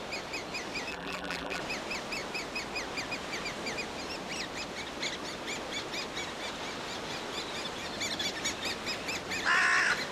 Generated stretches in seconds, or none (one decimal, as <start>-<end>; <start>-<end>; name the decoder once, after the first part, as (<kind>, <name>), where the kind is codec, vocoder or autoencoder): 0.9-1.6 (vocoder, BigVGAN v2)

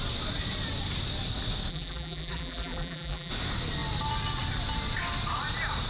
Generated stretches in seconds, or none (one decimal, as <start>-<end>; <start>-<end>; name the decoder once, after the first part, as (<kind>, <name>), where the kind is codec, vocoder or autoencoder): 1.7-3.3 (vocoder, BigVGAN v2)

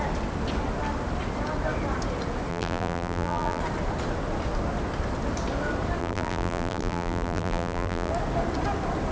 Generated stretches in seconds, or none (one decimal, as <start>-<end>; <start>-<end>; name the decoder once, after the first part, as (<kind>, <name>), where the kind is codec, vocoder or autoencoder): 2.5-3.6 (vocoder, BigVGAN v2); 6.0-8.1